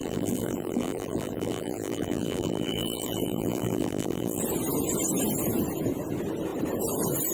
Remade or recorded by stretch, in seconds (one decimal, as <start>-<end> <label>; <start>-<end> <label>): 0.0-4.4 remade; 4.4-7.3 recorded